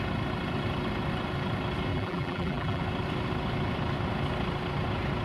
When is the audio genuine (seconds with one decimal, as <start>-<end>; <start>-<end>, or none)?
0.0-1.9; 2.8-5.2